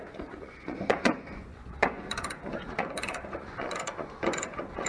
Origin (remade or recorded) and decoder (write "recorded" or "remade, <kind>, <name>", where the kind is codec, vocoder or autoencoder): remade, vocoder, Vocos